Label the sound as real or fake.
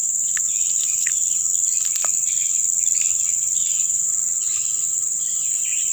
real